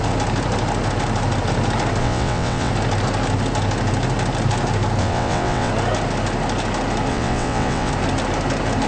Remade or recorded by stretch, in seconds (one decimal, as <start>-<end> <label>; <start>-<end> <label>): 0.0-2.0 recorded; 2.0-2.7 remade; 2.7-5.0 recorded; 5.0-5.7 remade; 5.7-7.1 recorded; 7.1-7.9 remade; 7.9-8.9 recorded